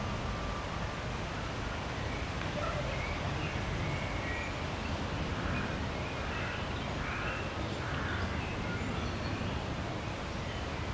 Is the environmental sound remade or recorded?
recorded